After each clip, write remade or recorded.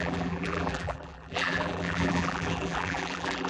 remade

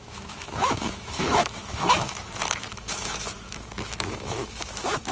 remade